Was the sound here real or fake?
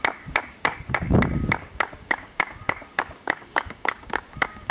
fake